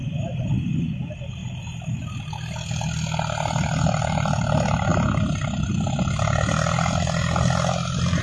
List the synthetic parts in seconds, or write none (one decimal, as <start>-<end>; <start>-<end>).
none